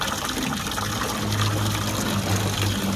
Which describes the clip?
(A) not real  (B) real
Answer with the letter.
B